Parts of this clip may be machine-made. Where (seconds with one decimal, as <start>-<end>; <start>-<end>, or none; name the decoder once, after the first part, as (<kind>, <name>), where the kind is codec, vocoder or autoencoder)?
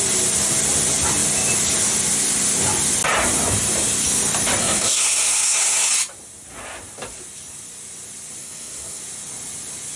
4.6-5.9 (codec, SNAC); 8.4-9.0